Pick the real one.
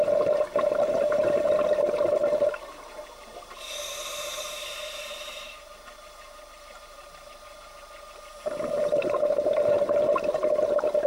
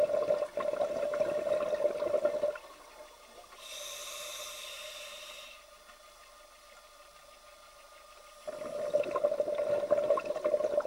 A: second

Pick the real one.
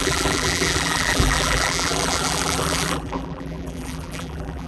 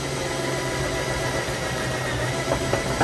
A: second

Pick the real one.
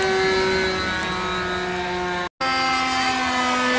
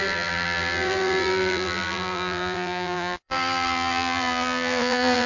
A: first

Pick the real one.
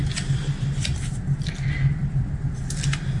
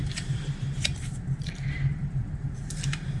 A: first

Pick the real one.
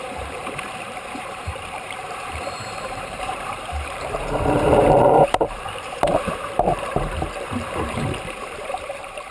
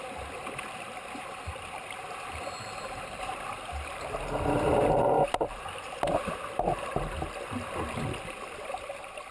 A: second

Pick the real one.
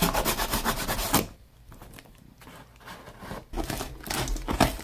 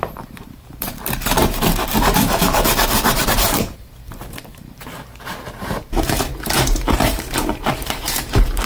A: first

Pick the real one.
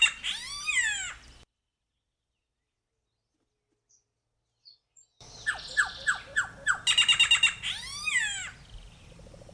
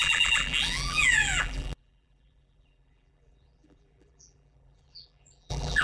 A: first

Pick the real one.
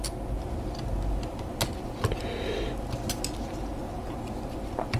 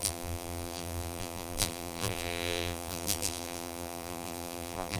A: first